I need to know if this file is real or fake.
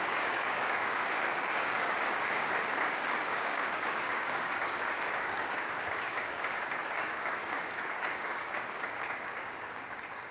fake